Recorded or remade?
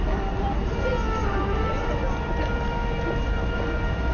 recorded